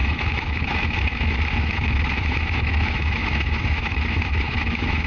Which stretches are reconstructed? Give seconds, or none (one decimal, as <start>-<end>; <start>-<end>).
0.0-5.1